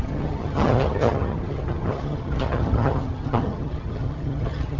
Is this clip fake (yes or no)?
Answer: yes